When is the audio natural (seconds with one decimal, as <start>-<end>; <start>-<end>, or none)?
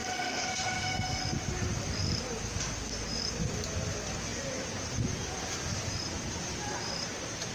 1.2-7.5